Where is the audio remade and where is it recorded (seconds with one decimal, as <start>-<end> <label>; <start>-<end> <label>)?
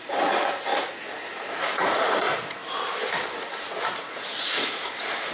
0.0-0.7 remade; 0.7-1.3 recorded; 1.3-2.6 remade; 2.6-3.4 recorded; 3.4-5.3 remade